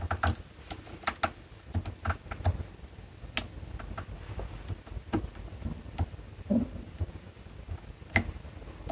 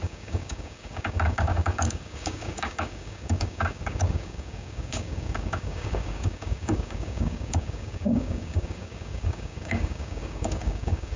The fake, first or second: second